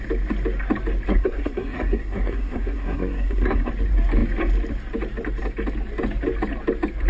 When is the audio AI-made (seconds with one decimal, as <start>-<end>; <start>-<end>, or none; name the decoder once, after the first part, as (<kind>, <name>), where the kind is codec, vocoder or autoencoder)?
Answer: 1.1-3.7 (codec, SNAC)